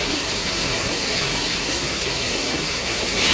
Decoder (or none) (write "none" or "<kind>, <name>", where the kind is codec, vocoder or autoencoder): codec, SNAC